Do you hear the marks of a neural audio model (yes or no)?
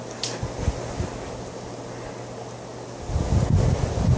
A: no